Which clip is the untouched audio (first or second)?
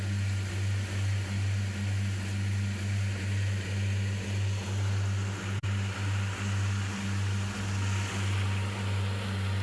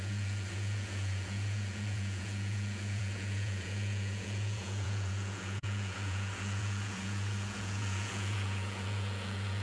first